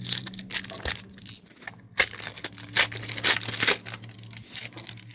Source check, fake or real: real